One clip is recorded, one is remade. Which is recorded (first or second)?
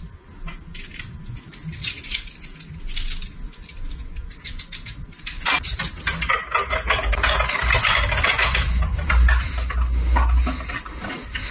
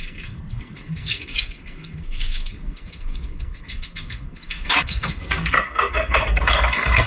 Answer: first